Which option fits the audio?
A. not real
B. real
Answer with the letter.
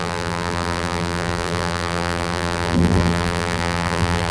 A